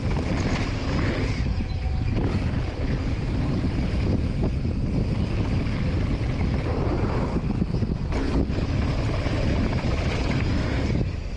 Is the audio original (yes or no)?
yes